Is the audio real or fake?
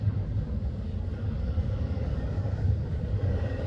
fake